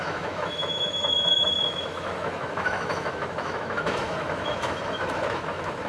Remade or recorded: remade